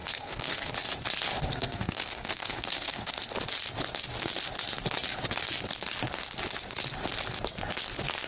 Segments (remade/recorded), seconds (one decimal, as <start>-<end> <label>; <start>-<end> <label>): 0.0-0.7 remade; 0.7-1.5 recorded; 1.5-3.1 remade; 3.1-8.3 recorded